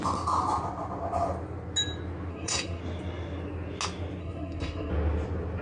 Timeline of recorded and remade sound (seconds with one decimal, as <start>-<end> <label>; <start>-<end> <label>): 0.0-2.3 recorded; 2.3-2.8 remade; 2.8-4.2 recorded; 4.2-4.9 remade; 4.9-5.6 recorded